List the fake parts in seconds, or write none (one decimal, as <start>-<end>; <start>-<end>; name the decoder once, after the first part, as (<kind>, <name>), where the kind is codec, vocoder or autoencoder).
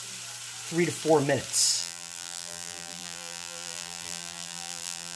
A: 1.8-5.2 (vocoder, BigVGAN v2)